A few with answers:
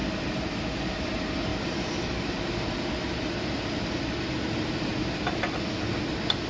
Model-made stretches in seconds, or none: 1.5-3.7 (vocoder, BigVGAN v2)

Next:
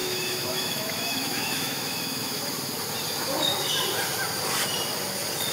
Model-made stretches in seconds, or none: 0.0-2.4 (autoencoder, DAC-VAE)